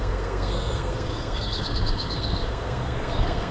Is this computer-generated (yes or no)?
yes